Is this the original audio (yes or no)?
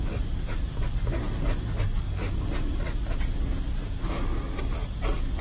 yes